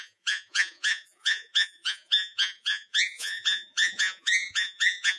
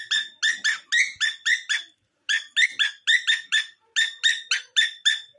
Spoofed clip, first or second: first